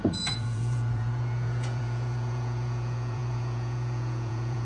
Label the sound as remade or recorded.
remade